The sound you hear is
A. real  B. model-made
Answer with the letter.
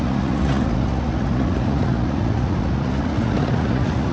B